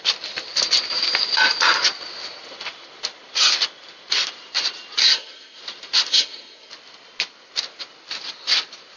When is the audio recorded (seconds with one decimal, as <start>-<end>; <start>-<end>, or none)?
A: 0.0-5.0; 5.6-6.1; 6.7-9.0